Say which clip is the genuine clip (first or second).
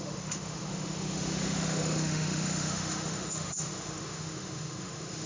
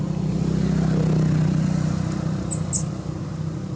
second